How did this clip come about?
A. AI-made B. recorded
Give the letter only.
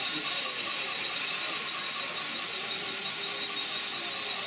B